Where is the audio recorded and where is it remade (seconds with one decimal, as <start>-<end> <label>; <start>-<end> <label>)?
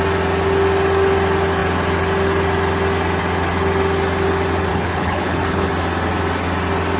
0.0-4.7 recorded; 4.7-5.7 remade; 5.7-7.0 recorded